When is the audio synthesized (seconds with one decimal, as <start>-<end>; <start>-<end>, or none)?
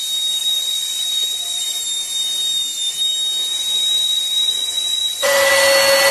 0.4-1.8; 3.5-5.5